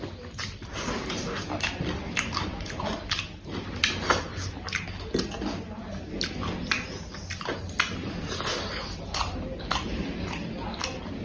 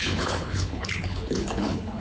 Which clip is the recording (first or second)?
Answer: first